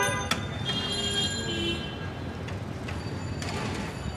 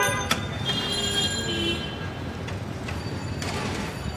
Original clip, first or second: first